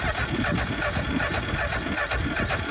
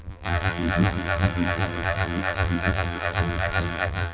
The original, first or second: first